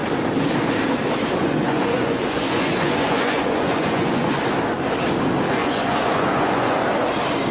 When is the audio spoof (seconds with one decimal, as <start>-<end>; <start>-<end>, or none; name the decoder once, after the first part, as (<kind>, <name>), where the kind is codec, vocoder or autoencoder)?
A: 1.4-4.4 (vocoder, Vocos); 5.6-7.0

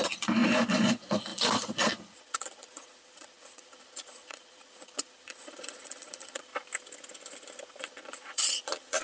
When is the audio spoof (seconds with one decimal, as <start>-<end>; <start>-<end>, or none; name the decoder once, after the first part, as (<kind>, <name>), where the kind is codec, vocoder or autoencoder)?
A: 0.0-6.5 (vocoder, Vocos); 7.8-9.0

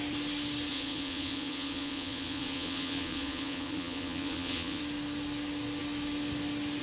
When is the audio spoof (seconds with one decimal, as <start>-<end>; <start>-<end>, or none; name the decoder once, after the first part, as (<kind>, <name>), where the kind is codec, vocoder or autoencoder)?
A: 0.7-4.8 (vocoder, Vocos)

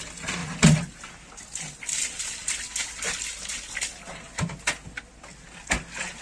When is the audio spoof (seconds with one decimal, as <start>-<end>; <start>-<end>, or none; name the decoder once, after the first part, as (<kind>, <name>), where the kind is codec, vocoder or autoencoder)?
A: none

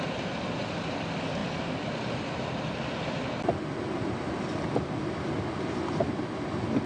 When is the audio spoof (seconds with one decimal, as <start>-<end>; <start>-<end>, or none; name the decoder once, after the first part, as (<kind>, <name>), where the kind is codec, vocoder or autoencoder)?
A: none

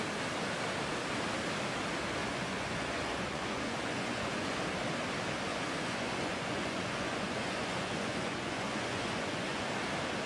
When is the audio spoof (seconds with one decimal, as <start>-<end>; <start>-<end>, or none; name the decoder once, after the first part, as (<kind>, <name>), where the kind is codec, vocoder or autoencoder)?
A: 2.2-4.6 (vocoder, Vocos); 5.5-9.7

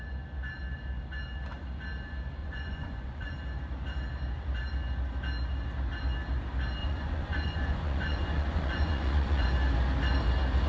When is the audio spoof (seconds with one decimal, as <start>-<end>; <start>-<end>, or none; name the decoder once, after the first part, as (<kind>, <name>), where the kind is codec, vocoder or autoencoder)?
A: 2.4-3.3 (vocoder, Vocos); 6.8-9.5